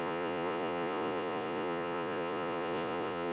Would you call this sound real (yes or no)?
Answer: no